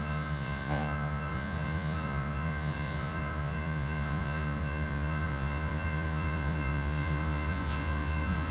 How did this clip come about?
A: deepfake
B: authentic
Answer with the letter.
A